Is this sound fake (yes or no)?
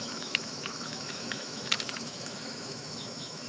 yes